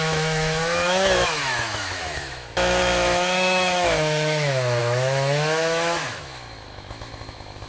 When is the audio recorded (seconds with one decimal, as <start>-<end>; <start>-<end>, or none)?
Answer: none